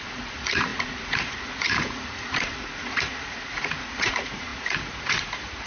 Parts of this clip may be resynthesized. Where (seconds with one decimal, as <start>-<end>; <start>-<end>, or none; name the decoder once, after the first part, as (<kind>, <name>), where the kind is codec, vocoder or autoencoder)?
0.0-5.7 (vocoder, Vocos)